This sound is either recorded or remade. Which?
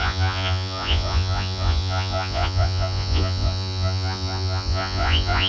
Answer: remade